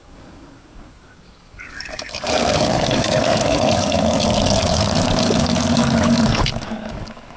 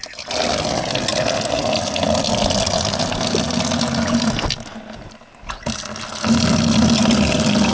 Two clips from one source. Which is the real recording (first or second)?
second